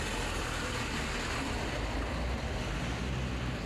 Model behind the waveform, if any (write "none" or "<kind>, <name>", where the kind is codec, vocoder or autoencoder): none